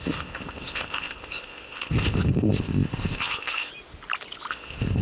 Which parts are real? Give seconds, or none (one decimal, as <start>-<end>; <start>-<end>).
3.7-4.5